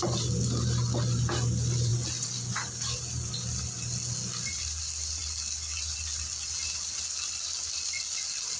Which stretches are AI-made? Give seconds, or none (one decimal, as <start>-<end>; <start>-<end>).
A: none